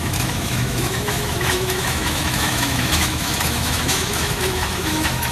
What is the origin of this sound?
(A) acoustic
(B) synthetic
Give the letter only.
B